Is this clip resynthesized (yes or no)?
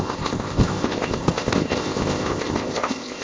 yes